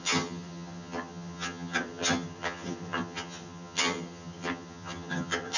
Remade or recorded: remade